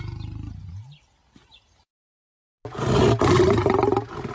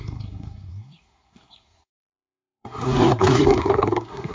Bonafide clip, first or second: first